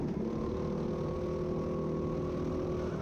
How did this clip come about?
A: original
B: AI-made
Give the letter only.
A